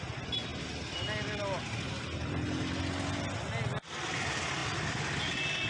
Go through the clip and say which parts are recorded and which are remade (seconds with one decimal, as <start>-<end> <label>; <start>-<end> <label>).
0.0-5.7 recorded